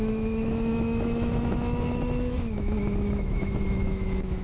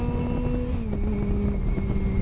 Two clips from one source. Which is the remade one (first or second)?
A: first